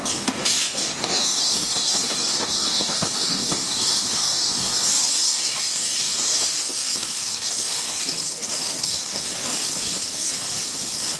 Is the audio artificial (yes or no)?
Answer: yes